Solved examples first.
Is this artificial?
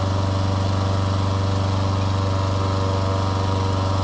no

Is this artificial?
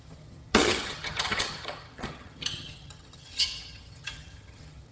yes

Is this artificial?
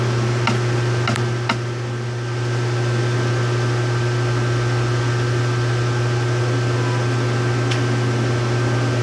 no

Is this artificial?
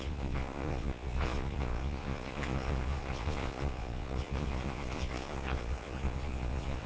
yes